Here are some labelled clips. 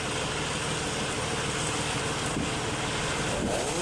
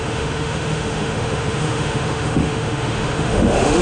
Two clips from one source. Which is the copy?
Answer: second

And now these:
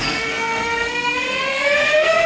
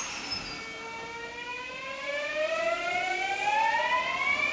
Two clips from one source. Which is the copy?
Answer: first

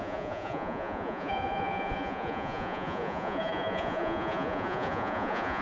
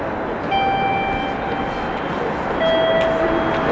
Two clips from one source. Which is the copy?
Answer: first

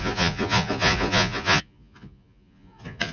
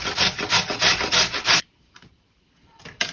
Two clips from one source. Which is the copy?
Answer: first